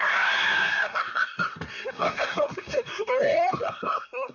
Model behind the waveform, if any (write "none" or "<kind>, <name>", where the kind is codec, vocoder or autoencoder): codec, SNAC